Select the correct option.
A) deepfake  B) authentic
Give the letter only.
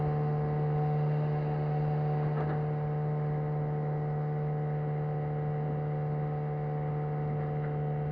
B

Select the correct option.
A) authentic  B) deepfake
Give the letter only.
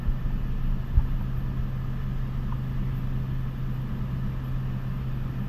A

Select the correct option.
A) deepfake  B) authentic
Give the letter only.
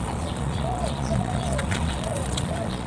A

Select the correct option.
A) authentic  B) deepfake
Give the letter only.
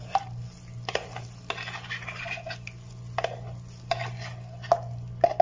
A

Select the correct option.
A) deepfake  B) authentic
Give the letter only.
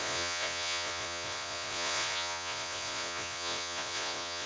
A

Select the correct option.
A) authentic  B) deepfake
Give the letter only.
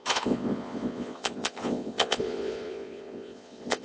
B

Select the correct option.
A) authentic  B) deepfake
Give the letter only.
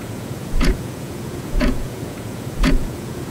B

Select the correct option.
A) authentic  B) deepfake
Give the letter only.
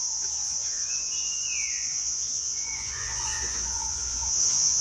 B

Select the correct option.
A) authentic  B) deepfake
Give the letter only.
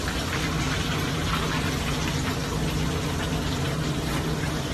A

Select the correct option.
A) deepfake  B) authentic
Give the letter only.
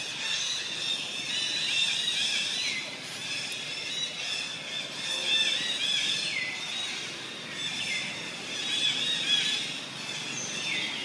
B